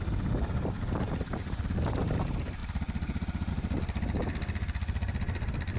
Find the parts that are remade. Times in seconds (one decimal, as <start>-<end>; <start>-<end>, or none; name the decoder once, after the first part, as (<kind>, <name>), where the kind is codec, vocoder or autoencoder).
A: none